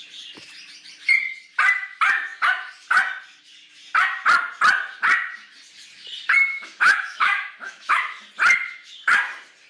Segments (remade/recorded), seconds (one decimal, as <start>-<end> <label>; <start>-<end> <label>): 0.0-6.5 recorded; 6.5-8.2 remade; 8.2-9.7 recorded